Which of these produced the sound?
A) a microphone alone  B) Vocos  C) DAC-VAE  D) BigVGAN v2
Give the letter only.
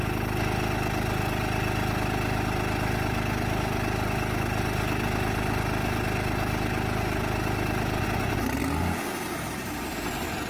A